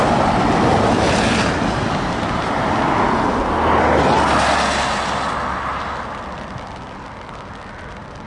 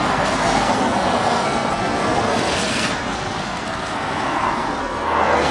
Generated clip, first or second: second